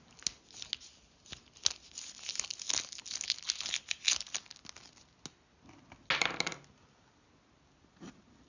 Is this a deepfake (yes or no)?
no